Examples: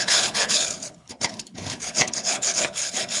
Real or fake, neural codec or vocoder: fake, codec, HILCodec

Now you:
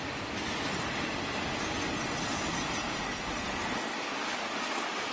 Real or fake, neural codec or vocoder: real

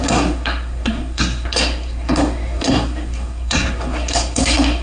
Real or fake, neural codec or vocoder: fake, codec, SNAC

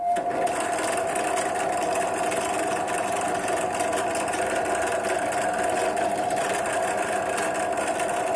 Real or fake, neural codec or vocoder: real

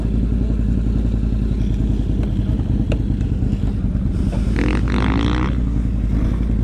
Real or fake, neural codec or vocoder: real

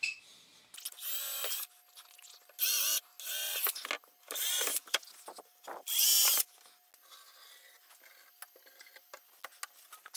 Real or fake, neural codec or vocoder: real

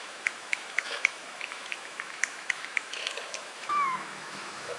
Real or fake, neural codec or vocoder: fake, autoencoder, DAC-VAE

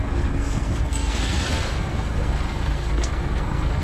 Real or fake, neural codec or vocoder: fake, codec, SNAC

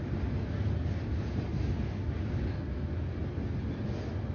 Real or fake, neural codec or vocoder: real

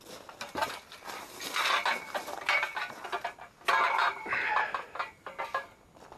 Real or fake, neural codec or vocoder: real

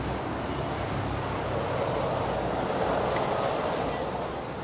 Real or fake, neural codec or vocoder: real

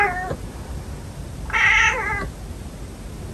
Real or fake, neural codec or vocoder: real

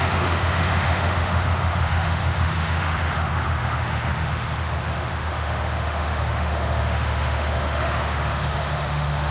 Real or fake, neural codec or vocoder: fake, autoencoder, DAC-VAE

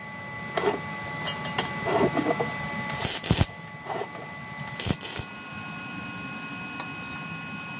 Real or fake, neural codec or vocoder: real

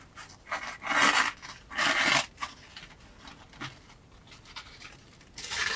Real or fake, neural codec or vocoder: real